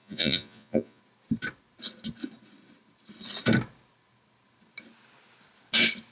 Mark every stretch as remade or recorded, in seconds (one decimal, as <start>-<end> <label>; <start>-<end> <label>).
0.0-1.0 remade; 1.0-6.1 recorded